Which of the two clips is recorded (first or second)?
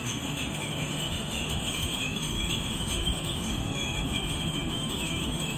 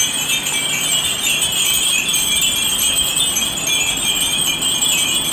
second